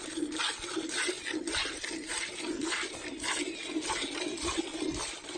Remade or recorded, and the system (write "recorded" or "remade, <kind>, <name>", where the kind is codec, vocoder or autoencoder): recorded